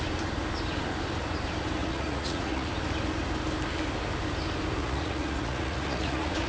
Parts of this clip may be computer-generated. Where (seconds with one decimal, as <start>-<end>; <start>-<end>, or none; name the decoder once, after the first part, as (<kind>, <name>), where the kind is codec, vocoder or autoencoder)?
1.8-2.7 (vocoder, Vocos); 4.8-6.5